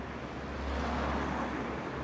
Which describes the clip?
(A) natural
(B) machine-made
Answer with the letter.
A